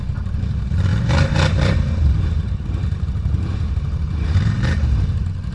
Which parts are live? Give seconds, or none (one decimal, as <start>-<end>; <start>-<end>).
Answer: none